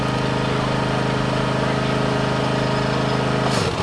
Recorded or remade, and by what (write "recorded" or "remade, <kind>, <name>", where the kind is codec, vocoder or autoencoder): recorded